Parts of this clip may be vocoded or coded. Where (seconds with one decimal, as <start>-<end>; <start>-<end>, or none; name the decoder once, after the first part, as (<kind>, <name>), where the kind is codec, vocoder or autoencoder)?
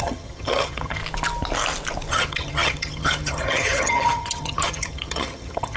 0.0-1.0 (vocoder, HiFi-GAN); 2.1-5.8